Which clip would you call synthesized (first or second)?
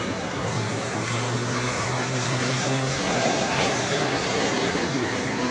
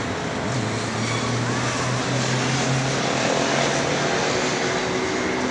first